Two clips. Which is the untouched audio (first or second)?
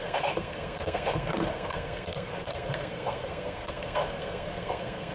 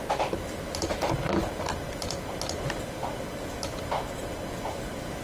second